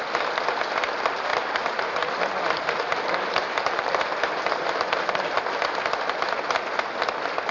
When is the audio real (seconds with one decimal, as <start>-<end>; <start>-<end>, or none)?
0.0-1.3; 2.1-2.9; 5.0-7.5